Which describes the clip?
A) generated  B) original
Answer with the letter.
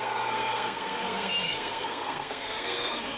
A